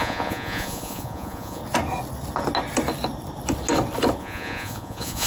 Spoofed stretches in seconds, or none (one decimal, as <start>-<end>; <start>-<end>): 0.0-1.6; 4.2-5.3